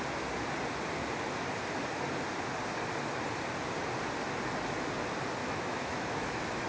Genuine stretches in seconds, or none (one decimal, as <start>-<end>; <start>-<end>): 0.0-5.4